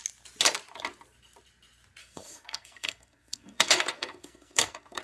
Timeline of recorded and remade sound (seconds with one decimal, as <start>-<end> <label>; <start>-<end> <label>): 0.0-2.0 recorded; 2.0-5.0 remade